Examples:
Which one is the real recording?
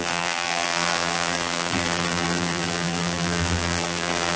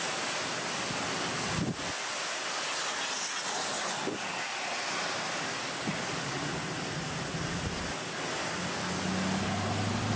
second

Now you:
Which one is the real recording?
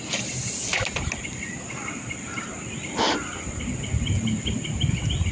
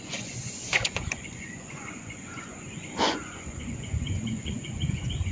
first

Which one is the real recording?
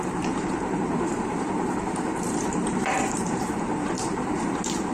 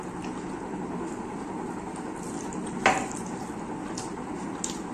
second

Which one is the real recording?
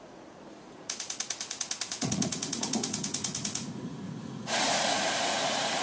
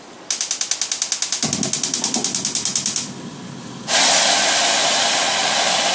second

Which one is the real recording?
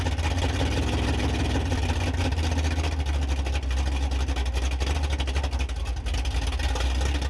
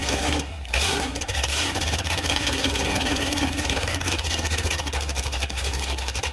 first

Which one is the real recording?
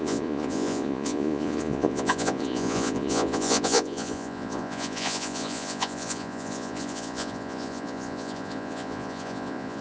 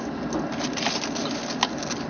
second